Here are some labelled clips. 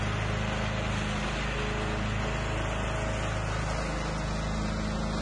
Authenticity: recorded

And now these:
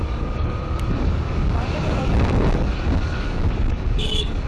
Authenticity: remade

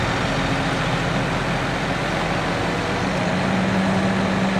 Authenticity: recorded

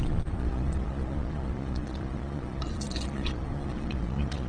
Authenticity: remade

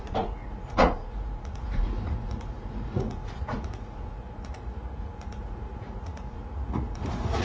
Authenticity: remade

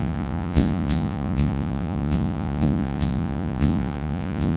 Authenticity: remade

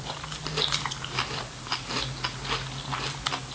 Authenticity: recorded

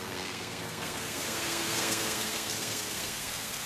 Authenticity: remade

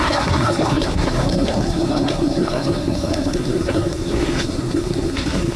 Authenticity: remade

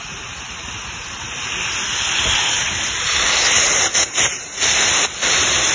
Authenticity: remade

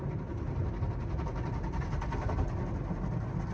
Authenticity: recorded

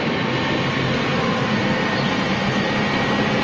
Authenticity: recorded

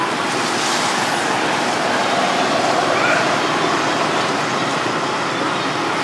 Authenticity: recorded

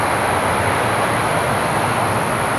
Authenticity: recorded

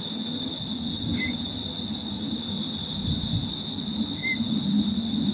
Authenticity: recorded